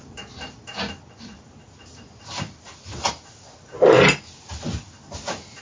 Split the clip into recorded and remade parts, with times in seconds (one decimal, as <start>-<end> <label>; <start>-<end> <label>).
0.0-5.6 recorded